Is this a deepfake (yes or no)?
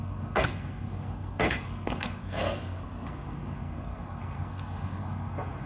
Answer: yes